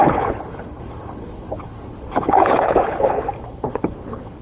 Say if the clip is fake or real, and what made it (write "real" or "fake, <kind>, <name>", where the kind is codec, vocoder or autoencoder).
fake, codec, HILCodec